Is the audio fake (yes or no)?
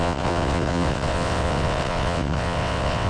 yes